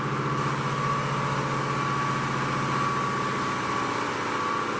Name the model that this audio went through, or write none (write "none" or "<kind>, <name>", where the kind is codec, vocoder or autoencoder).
none